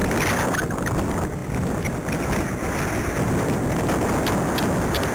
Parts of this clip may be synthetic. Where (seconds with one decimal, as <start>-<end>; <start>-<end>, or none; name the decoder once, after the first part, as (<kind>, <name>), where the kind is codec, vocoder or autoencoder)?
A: none